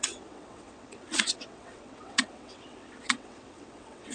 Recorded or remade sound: remade